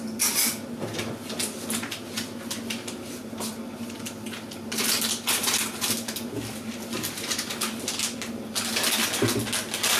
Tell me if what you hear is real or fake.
real